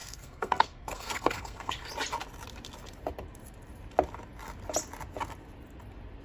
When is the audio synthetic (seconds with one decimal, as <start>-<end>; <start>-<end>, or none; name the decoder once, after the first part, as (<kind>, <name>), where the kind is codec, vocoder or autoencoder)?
0.0-1.9 (codec, SNAC)